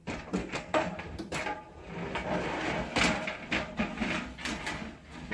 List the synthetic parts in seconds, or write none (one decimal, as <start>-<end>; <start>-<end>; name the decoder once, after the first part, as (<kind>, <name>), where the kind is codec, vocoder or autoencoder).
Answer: 0.4-1.0 (codec, SNAC)